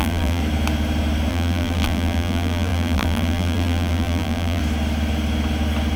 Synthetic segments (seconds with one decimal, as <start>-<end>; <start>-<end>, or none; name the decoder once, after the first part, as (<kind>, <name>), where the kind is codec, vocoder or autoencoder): 0.0-0.4 (vocoder, BigVGAN v2); 1.3-4.6

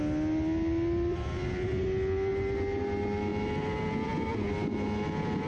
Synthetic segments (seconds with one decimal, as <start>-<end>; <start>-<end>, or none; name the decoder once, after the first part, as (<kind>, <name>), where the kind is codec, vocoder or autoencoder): none